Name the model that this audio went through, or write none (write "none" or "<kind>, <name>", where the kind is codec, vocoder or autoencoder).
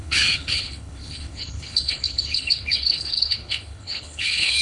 codec, HILCodec